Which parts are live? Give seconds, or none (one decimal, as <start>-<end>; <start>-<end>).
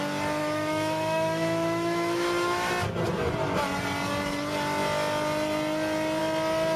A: 0.0-0.4; 2.7-6.8